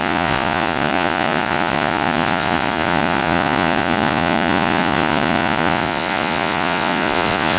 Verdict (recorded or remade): remade